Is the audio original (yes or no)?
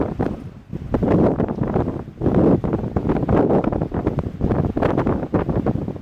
yes